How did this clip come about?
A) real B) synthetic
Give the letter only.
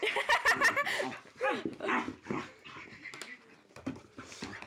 A